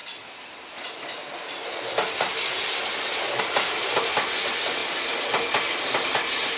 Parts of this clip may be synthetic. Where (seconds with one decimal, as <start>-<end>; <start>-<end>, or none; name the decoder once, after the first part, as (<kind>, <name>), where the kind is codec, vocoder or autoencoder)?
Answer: none